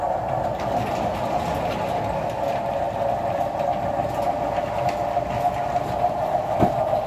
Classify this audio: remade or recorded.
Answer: recorded